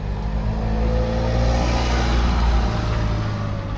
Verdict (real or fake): real